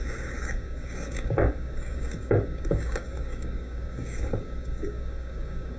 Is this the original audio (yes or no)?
no